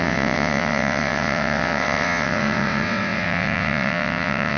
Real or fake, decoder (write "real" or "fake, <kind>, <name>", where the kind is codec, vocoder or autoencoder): fake, vocoder, WaveNeXt